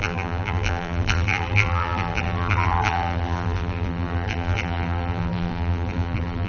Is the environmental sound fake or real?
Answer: fake